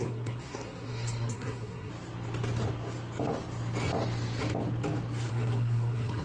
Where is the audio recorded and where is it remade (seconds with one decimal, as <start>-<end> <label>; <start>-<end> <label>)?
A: 0.0-1.9 remade; 1.9-5.3 recorded; 5.3-6.2 remade